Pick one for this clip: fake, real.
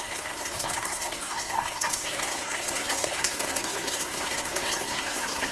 fake